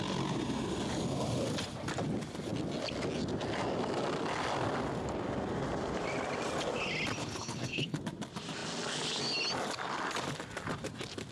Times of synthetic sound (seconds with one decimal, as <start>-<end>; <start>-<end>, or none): 7.2-8.0